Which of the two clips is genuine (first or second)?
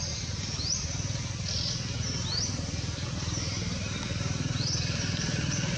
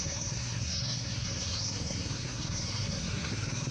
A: first